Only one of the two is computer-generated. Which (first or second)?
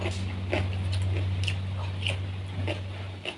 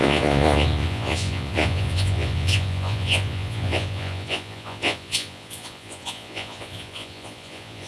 second